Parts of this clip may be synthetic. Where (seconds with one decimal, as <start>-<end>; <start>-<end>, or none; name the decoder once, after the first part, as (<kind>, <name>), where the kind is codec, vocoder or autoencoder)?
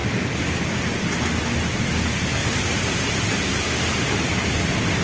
2.4-3.9 (vocoder, BigVGAN v2)